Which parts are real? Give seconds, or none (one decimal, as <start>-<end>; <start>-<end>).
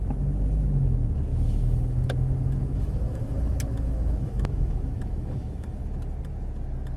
0.0-1.3; 2.0-2.6; 5.8-7.0